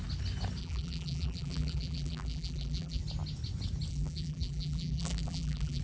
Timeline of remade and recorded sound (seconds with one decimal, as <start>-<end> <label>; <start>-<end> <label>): 0.0-0.6 recorded; 0.6-3.0 remade; 3.0-3.9 recorded; 3.9-5.8 remade